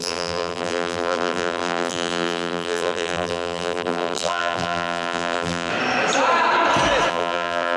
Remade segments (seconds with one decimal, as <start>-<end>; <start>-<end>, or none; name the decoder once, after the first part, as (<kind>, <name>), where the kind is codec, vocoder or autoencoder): 0.0-5.7 (vocoder, BigVGAN v2); 7.1-7.8